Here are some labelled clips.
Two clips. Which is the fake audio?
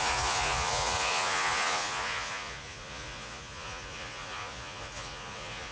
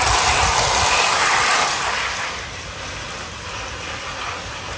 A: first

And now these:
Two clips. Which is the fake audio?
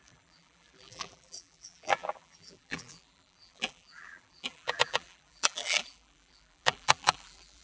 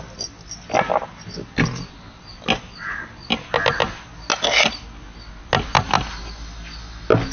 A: first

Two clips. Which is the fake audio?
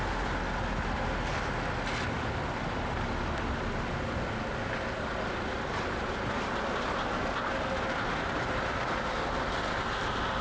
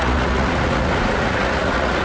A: second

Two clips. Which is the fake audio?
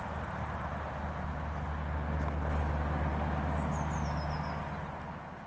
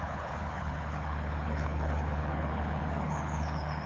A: second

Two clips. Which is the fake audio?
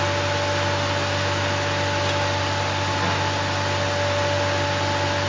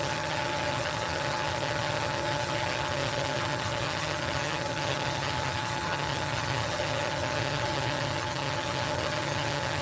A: second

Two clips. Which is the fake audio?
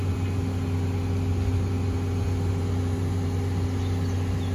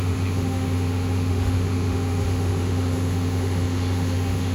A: second